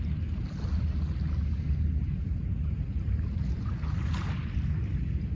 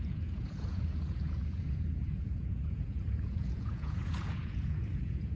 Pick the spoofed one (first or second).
second